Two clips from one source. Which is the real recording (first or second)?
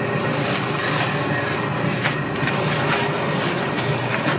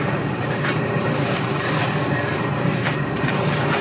first